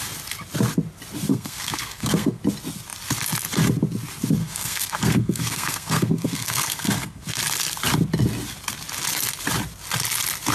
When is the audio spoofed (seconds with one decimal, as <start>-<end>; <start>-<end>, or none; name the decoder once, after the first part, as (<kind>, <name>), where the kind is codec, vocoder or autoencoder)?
1.3-2.4 (codec, SNAC); 4.4-7.3